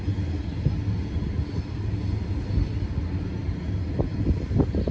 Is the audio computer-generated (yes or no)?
no